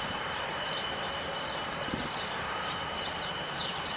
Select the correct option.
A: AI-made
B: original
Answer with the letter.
A